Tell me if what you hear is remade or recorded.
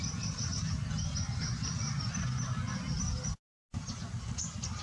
recorded